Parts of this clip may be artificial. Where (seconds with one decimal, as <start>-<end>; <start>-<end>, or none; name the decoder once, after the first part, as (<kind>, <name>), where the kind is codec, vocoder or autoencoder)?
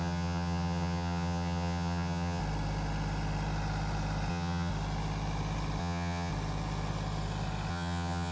0.0-2.4 (vocoder, HiFi-GAN); 4.3-4.7; 5.8-6.3; 7.7-8.3